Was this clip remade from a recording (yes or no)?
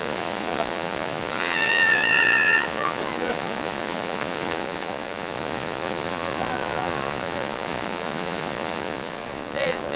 yes